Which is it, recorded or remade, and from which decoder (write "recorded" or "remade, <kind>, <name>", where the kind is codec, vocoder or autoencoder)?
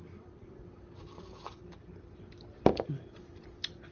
remade, vocoder, BigVGAN v2